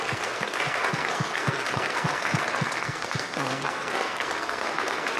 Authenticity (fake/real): fake